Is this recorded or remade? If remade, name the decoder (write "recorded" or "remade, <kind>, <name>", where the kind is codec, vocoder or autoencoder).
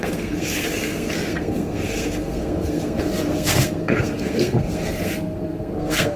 remade, codec, SNAC